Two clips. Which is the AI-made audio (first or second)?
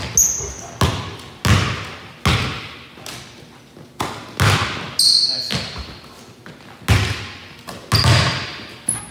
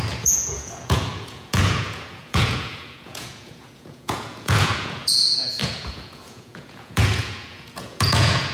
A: second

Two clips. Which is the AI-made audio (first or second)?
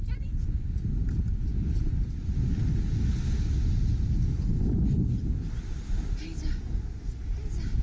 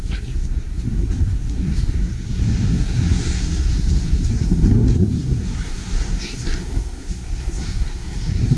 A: second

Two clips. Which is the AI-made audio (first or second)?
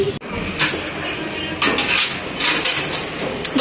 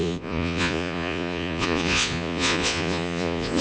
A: second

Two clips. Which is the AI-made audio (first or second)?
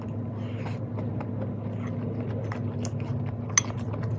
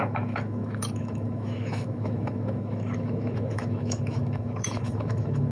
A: second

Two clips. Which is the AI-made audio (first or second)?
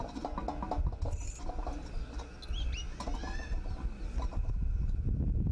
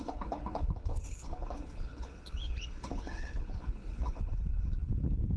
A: second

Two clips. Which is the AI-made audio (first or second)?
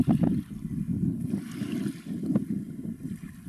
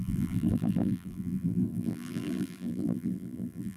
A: second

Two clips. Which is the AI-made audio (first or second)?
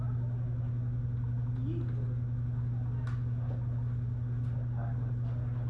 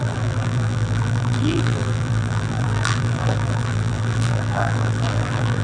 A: second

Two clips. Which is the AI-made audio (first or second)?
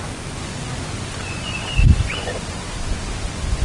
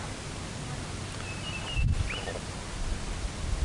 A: first